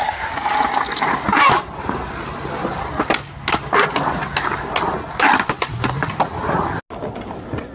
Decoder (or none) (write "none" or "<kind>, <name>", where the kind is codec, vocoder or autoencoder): none